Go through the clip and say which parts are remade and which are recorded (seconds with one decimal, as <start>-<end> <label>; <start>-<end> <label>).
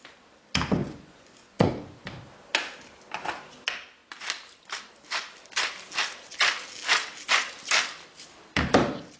0.0-0.8 recorded; 0.8-1.7 remade; 1.7-9.2 recorded